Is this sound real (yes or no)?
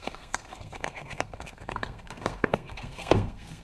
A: no